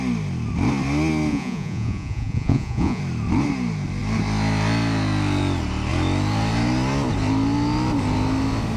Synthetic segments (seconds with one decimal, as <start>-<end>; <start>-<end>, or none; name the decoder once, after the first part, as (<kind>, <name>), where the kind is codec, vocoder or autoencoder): 1.3-3.0 (vocoder, Vocos)